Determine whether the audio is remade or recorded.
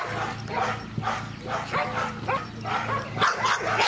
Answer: recorded